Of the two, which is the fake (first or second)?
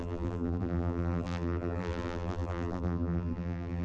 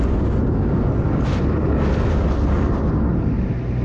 first